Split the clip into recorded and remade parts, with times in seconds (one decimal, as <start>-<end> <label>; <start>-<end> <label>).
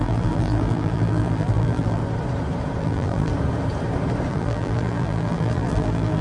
0.0-2.0 remade; 2.0-2.8 recorded; 2.8-3.3 remade; 3.3-4.3 recorded; 4.3-6.2 remade